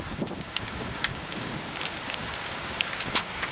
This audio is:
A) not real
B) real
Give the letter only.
A